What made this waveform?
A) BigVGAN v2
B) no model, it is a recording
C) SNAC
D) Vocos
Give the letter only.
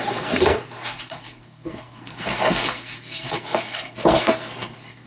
C